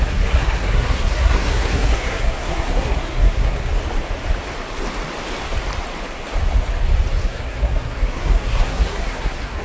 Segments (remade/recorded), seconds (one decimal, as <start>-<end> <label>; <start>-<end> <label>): 0.0-3.7 remade; 3.7-7.1 recorded; 7.1-9.6 remade